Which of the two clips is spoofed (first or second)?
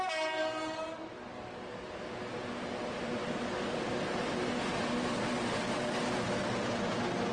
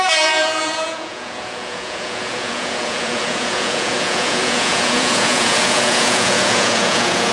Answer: second